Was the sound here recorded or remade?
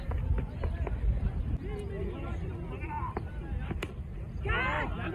recorded